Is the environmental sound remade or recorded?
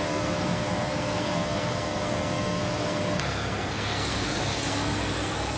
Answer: remade